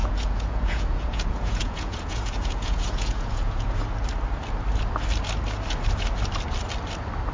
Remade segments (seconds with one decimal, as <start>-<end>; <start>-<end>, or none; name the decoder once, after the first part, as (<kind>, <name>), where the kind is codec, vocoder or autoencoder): 0.0-3.8 (vocoder, Vocos)